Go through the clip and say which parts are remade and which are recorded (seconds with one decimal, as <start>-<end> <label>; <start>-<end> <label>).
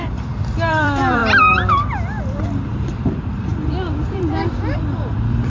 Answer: 0.0-1.2 remade; 1.2-2.2 recorded; 2.2-5.5 remade